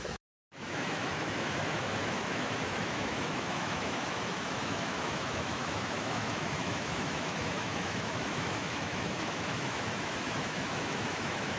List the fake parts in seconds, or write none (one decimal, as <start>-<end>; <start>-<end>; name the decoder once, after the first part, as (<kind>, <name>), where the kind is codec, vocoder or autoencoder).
0.0-11.6 (autoencoder, DAC-VAE)